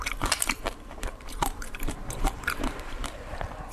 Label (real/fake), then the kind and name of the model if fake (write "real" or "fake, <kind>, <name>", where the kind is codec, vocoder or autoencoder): fake, vocoder, BigVGAN v2